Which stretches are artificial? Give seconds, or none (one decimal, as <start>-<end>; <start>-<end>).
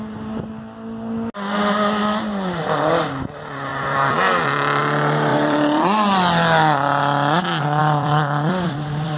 3.7-4.8; 5.3-7.0; 7.8-9.2